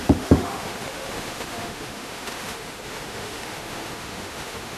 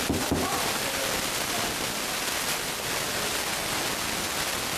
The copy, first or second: first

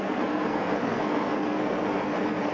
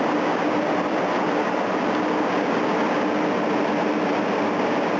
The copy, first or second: first